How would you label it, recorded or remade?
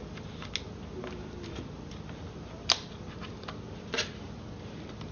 recorded